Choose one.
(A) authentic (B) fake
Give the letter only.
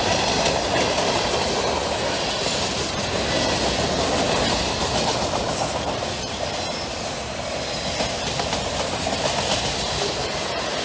A